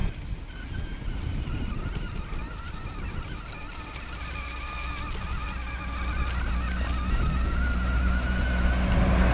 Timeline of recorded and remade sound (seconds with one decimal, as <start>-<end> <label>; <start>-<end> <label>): 0.0-9.3 recorded